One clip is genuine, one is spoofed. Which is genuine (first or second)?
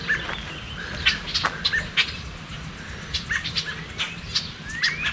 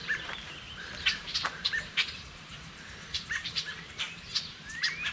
first